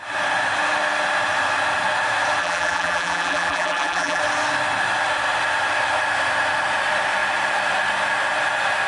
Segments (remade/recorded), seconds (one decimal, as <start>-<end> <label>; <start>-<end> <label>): 0.0-2.4 recorded; 2.4-4.2 remade; 4.2-8.9 recorded